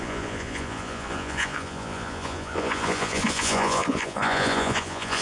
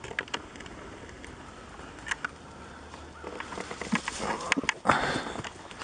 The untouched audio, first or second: second